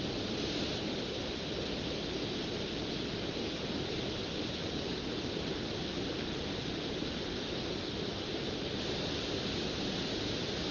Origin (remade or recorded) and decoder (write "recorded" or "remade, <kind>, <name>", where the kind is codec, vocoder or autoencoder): recorded